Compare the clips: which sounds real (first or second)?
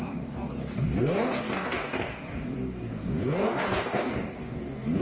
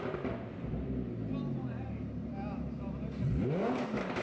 second